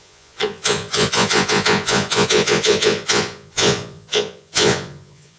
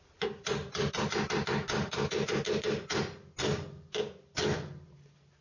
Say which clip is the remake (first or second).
first